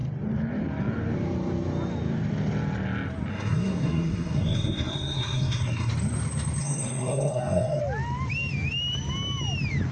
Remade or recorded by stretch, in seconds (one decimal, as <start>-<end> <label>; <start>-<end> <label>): 0.0-3.3 recorded; 3.3-5.9 remade; 5.9-6.6 recorded; 6.6-7.8 remade; 7.8-9.9 recorded